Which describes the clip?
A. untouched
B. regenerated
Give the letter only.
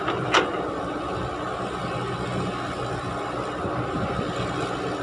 A